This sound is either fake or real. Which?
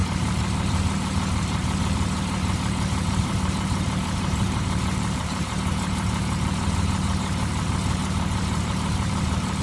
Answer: fake